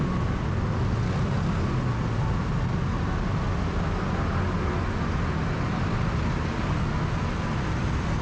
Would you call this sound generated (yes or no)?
no